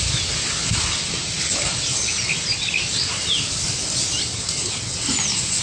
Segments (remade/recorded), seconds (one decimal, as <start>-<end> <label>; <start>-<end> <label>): 0.0-5.6 recorded